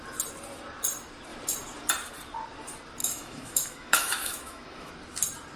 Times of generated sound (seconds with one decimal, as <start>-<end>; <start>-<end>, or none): 3.0-4.9